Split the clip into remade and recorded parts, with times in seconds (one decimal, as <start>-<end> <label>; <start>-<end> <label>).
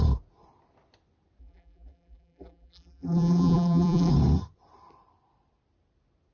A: 0.0-1.4 recorded; 1.4-4.1 remade; 4.1-6.3 recorded